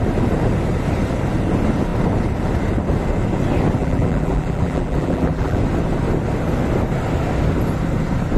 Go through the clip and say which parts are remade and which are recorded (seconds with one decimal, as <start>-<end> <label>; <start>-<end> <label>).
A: 0.0-3.8 recorded; 3.8-5.6 remade; 5.6-8.4 recorded